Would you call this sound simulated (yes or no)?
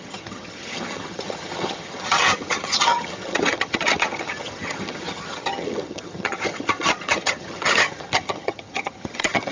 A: yes